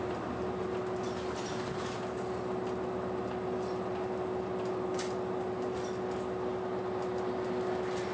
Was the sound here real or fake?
real